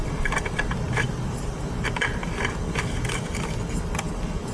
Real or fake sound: real